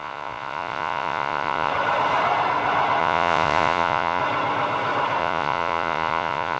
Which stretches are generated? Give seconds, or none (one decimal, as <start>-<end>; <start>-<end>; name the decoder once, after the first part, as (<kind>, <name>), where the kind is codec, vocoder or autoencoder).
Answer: 0.0-1.7 (vocoder, Vocos); 3.0-4.2; 5.2-6.6